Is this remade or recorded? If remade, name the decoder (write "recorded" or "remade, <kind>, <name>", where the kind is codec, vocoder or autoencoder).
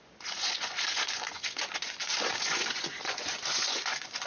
remade, vocoder, Vocos